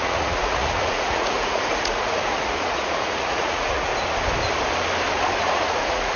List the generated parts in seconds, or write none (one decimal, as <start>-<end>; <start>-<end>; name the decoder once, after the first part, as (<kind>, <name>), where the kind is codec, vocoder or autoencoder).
0.0-3.9 (vocoder, Vocos); 5.4-6.2